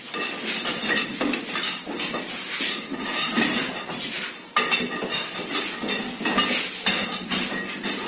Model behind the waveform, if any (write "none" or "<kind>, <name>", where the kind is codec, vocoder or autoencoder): none